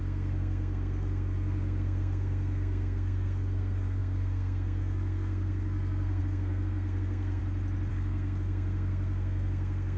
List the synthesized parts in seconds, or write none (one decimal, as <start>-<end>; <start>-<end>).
0.0-7.4; 7.9-10.0